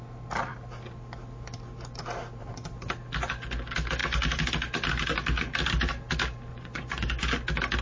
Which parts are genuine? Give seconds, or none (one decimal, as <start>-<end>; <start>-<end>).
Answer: 0.0-6.5; 7.2-7.8